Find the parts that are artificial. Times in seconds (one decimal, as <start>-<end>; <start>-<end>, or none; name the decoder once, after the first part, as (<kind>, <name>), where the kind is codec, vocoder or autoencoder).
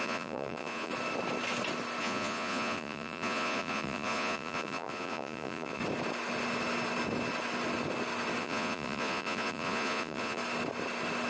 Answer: 0.0-0.9 (vocoder, Vocos); 2.0-5.8; 8.4-10.4